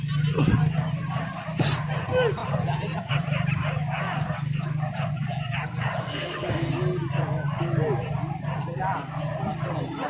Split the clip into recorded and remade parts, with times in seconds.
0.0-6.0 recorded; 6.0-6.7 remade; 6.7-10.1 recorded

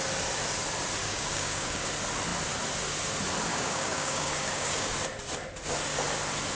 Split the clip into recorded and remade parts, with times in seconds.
0.0-1.0 recorded; 1.0-1.9 remade; 1.9-3.5 recorded; 3.5-4.9 remade; 4.9-6.5 recorded

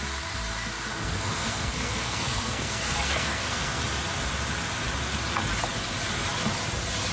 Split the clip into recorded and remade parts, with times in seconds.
0.0-0.9 recorded; 0.9-3.8 remade; 3.8-7.1 recorded

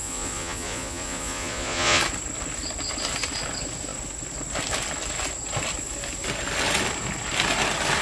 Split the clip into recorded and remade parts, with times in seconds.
0.0-2.0 remade; 2.0-8.0 recorded

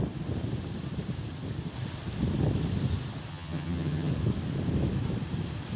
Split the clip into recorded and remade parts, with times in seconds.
0.0-3.3 recorded; 3.3-4.1 remade; 4.1-5.8 recorded

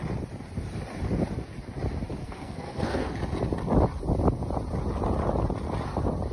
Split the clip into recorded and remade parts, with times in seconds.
0.0-2.2 recorded; 2.2-3.2 remade; 3.2-6.3 recorded